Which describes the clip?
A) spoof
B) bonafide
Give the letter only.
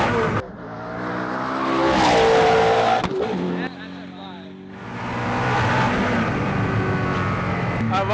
B